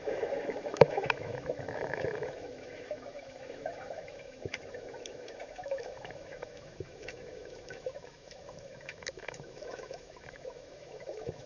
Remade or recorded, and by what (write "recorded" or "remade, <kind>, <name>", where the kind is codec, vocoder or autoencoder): remade, autoencoder, DAC-VAE